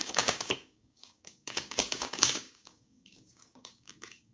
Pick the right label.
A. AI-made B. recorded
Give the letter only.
A